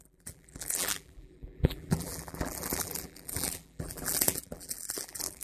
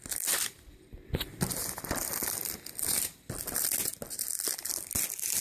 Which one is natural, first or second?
second